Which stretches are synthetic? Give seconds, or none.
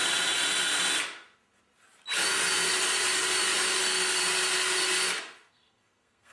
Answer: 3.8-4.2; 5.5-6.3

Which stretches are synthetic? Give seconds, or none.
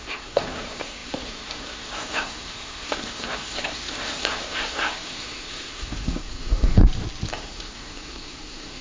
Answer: 0.0-6.8; 7.3-8.8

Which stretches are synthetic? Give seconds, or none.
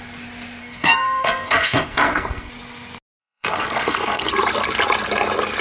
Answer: 0.6-2.5; 3.2-4.3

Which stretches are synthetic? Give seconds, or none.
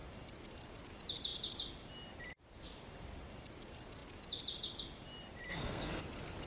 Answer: 5.5-6.0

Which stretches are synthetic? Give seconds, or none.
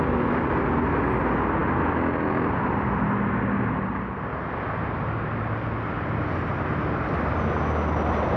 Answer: none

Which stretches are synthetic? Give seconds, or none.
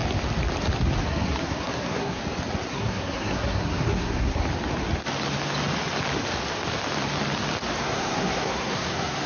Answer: 1.0-2.2; 2.7-4.4; 7.8-9.3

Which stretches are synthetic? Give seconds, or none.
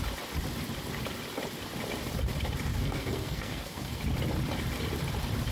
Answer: 2.7-4.0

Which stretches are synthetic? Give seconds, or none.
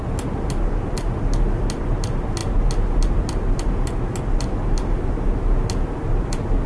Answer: none